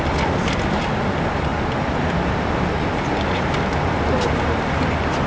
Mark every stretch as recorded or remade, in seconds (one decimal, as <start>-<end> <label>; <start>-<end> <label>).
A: 0.0-5.3 recorded